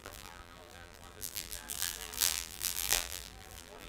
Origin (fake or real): fake